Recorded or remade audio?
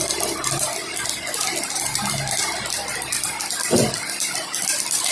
remade